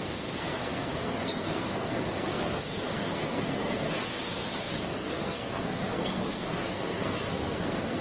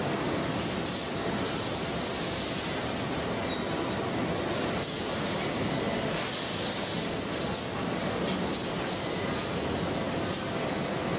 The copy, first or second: first